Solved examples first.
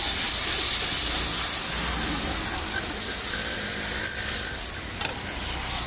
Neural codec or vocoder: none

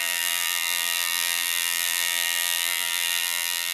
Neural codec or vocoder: vocoder, BigVGAN v2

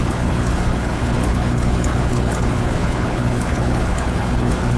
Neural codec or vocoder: codec, HILCodec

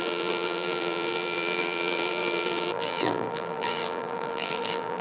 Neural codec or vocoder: vocoder, BigVGAN v2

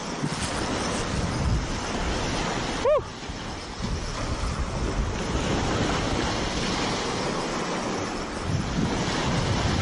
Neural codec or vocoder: none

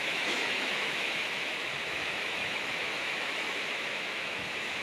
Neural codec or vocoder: autoencoder, DAC-VAE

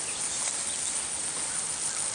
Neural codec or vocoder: none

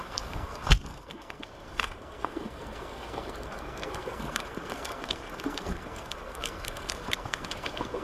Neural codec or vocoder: codec, SNAC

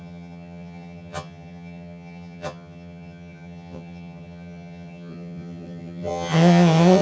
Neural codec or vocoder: vocoder, HiFi-GAN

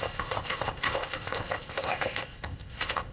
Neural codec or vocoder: codec, ZipCodec